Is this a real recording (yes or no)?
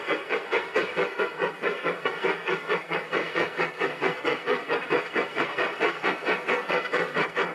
no